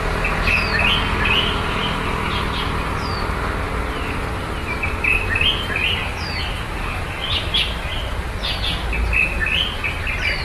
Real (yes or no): yes